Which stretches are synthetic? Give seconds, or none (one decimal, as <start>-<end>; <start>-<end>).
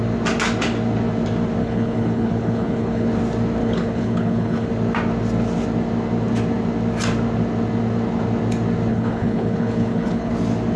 1.6-3.1; 3.6-4.7; 8.9-10.3